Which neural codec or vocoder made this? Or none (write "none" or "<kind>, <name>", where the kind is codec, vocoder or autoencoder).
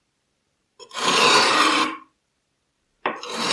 vocoder, BigVGAN v2